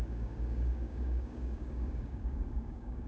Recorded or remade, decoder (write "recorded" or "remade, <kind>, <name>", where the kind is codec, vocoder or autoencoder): remade, codec, DAC